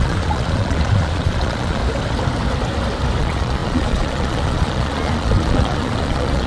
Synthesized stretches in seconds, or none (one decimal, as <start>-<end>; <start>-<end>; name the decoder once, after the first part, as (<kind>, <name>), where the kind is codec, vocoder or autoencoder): 0.0-1.8 (vocoder, Vocos); 3.2-6.5